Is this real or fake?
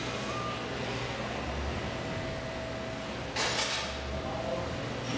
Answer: real